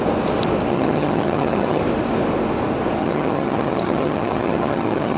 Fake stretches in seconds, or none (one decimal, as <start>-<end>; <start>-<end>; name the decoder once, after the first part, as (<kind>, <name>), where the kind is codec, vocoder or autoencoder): 0.7-1.8 (vocoder, HiFi-GAN); 3.0-5.2